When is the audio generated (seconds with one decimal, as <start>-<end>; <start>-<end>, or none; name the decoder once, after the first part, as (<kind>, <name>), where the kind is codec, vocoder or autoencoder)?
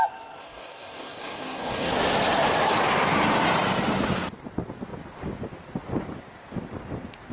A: 0.4-1.9 (codec, DAC)